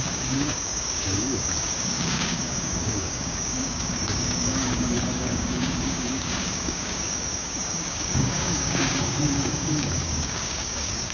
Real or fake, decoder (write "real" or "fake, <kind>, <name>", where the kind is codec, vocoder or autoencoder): fake, codec, DAC